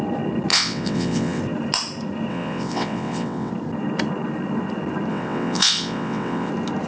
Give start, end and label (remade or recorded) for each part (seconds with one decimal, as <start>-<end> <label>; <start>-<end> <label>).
0.0-0.5 recorded; 0.5-1.4 remade; 1.4-2.3 recorded; 2.3-3.5 remade; 3.5-5.1 recorded; 5.1-6.5 remade; 6.5-6.9 recorded